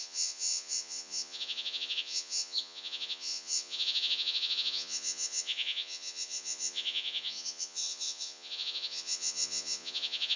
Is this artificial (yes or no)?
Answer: yes